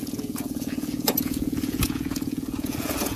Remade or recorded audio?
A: remade